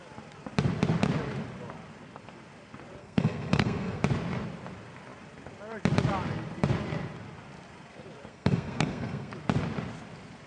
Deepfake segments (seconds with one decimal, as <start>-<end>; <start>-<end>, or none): 3.0-4.0; 8.3-9.3